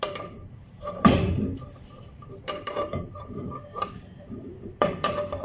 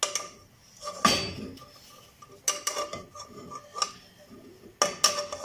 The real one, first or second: second